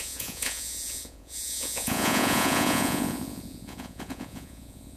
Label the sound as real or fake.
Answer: fake